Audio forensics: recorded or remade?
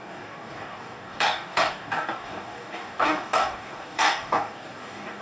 remade